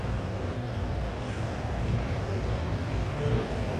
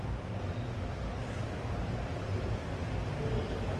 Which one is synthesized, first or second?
first